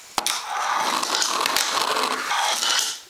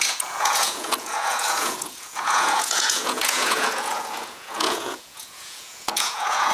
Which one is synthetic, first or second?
second